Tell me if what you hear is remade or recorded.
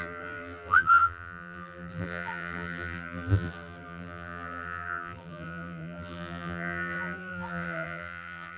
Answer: remade